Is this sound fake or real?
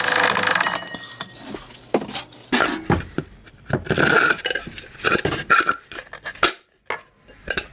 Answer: real